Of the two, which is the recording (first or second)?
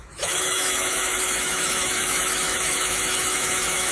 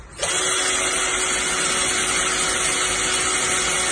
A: second